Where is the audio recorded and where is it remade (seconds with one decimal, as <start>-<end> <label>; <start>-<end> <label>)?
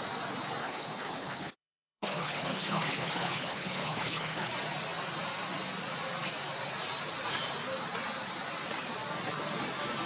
0.0-0.6 recorded; 0.6-4.5 remade; 4.5-10.1 recorded